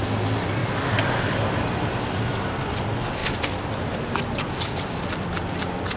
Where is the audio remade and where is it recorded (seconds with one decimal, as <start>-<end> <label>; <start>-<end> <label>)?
0.0-0.6 recorded; 0.6-1.6 remade; 1.6-3.2 recorded; 3.2-3.8 remade; 3.8-6.0 recorded